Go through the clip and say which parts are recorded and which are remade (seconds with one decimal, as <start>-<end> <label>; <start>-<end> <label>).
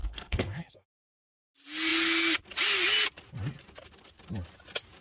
0.0-1.2 remade; 1.2-5.0 recorded